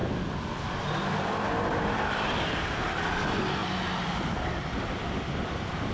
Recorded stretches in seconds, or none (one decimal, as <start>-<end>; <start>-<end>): 0.0-0.6; 3.6-4.3